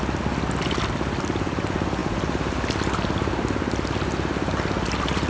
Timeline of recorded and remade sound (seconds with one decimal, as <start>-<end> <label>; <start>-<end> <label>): 0.0-5.3 recorded